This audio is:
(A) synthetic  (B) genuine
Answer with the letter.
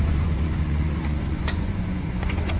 A